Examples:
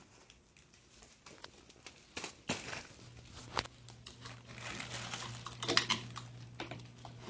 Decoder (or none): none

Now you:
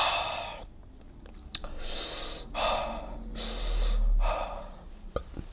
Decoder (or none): none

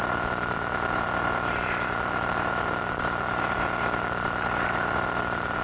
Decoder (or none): vocoder, BigVGAN v2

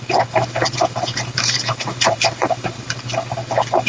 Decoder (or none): vocoder, BigVGAN v2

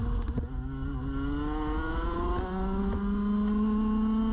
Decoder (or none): none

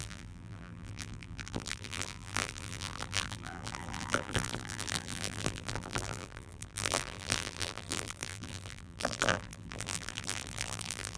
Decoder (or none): vocoder, BigVGAN v2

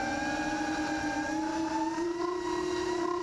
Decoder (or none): vocoder, BigVGAN v2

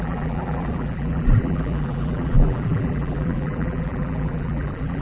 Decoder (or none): vocoder, BigVGAN v2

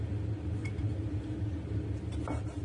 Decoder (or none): none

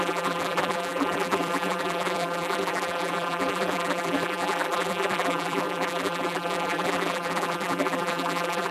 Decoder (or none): vocoder, BigVGAN v2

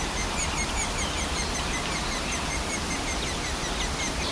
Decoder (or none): none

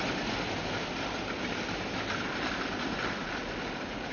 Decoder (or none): none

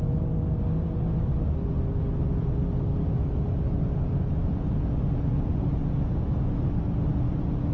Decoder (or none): none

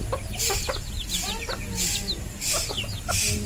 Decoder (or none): none